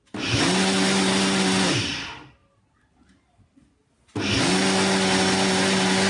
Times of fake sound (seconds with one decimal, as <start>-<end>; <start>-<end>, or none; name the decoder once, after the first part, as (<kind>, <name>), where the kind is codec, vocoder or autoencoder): none